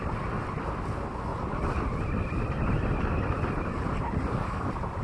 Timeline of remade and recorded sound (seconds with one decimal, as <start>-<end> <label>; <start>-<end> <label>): 0.0-5.0 recorded